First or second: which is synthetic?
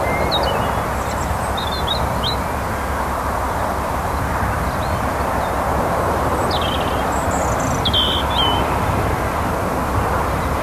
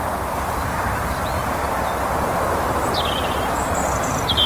second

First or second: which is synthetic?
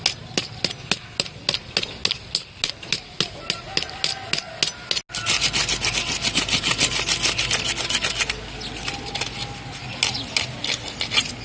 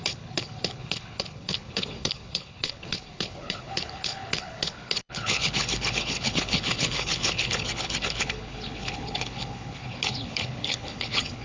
second